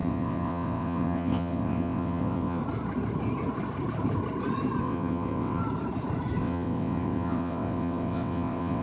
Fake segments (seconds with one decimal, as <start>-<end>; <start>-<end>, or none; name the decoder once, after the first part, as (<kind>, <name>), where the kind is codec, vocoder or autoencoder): 0.0-2.6 (vocoder, WaveNeXt); 4.8-5.6; 6.4-8.8